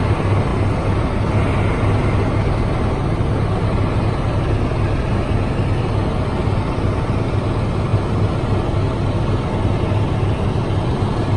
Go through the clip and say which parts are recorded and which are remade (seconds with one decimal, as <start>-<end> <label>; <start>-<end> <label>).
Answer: 0.0-11.4 recorded